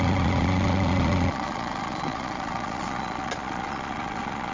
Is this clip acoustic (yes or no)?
no